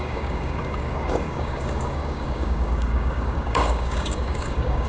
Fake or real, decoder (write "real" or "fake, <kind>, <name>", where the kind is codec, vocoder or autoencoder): fake, codec, DAC